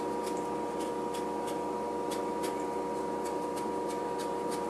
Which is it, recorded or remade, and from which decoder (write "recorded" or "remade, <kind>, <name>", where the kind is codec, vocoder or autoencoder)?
recorded